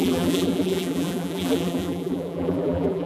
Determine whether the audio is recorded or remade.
remade